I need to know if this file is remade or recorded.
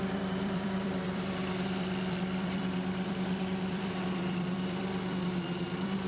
remade